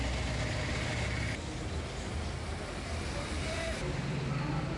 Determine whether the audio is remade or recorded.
recorded